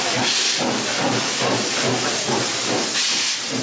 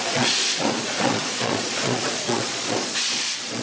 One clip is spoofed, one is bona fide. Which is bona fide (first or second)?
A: first